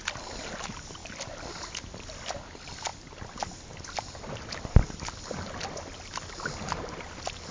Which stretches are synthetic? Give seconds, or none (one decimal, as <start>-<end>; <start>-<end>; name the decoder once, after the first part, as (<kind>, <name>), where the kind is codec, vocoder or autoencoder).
none

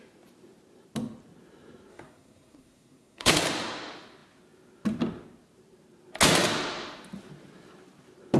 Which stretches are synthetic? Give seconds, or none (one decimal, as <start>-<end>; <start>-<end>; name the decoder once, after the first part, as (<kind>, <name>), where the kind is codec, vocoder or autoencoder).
1.9-3.3 (codec, SNAC)

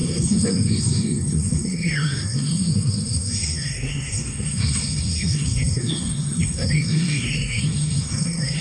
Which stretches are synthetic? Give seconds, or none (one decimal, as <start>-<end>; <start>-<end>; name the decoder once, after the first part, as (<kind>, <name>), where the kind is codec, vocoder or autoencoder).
0.0-8.6 (codec, SNAC)

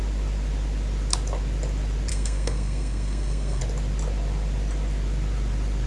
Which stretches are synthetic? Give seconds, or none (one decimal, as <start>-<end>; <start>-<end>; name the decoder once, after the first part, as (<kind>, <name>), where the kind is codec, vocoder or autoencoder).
2.1-3.6 (codec, SNAC)